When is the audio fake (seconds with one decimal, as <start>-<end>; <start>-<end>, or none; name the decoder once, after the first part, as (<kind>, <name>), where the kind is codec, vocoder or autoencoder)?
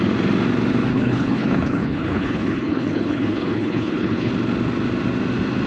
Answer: 0.9-4.3 (codec, HILCodec)